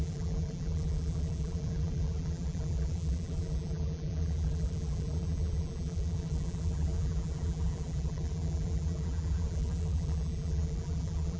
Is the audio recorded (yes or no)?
no